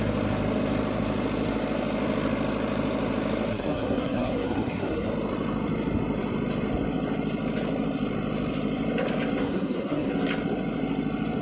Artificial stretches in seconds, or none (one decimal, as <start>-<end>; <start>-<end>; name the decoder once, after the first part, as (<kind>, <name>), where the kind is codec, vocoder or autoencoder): 3.5-5.1 (codec, SNAC); 9.4-10.1